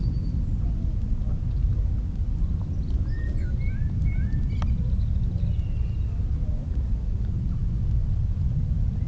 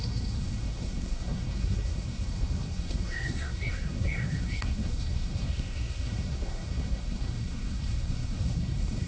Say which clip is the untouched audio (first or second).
first